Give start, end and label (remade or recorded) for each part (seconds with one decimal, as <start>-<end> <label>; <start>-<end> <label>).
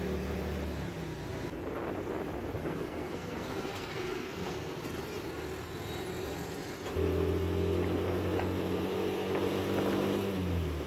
0.0-2.6 recorded; 2.6-4.8 remade; 4.8-10.9 recorded